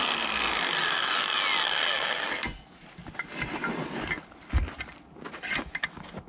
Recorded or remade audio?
recorded